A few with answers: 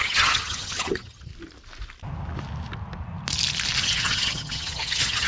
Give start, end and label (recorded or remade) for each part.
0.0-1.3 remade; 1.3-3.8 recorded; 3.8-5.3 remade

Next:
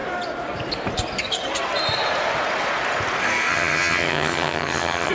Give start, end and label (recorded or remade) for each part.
0.0-3.5 recorded; 3.5-5.1 remade

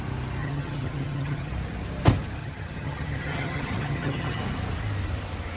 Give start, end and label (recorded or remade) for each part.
0.0-0.4 recorded; 0.4-1.5 remade; 1.5-2.4 recorded; 2.4-4.4 remade; 4.4-5.6 recorded

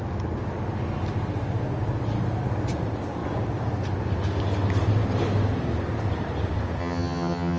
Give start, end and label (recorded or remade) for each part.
0.0-6.8 recorded; 6.8-7.6 remade